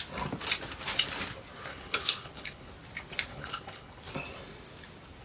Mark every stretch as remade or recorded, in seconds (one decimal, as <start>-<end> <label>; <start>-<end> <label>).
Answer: 0.0-1.7 recorded; 1.7-2.7 remade; 2.7-3.3 recorded; 3.3-4.0 remade; 4.0-5.2 recorded